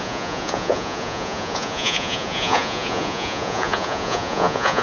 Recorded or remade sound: remade